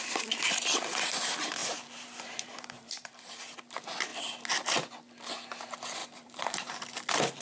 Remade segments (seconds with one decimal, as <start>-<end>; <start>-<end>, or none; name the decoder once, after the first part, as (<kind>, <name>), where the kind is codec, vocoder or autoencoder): 1.6-3.3 (vocoder, BigVGAN v2); 6.0-6.8